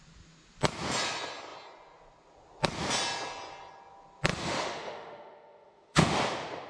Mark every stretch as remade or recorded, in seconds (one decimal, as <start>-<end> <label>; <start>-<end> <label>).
0.0-4.3 recorded; 4.3-6.1 remade; 6.1-6.7 recorded